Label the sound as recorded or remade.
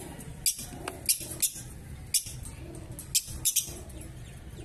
recorded